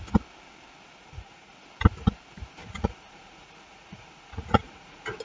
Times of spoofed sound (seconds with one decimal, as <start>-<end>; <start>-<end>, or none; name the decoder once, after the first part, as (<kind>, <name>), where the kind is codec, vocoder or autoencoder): 1.0-1.5 (vocoder, Vocos); 2.6-5.2